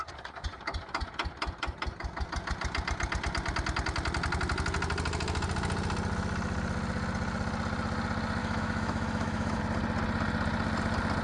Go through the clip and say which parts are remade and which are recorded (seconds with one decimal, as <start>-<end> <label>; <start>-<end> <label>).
0.0-8.4 recorded; 8.4-9.6 remade; 9.6-11.2 recorded